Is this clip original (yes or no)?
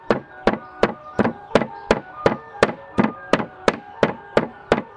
yes